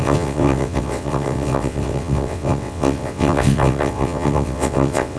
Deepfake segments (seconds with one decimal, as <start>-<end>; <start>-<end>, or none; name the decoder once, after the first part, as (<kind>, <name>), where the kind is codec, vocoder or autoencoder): 0.0-5.2 (vocoder, WaveNeXt)